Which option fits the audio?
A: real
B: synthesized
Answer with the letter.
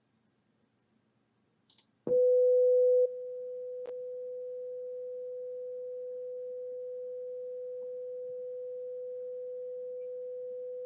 A